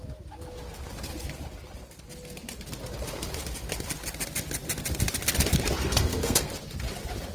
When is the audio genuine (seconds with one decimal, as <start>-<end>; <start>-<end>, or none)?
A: 0.0-5.8; 6.5-7.3